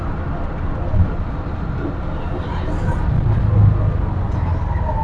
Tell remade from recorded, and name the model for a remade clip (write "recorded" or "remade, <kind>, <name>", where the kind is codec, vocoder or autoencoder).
recorded